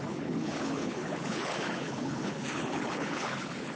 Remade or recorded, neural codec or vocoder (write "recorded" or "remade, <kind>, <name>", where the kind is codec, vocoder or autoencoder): remade, codec, HILCodec